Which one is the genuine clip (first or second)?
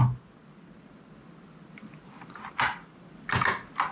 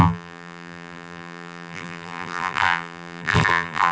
first